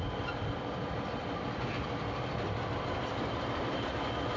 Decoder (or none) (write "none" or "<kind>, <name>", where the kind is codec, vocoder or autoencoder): none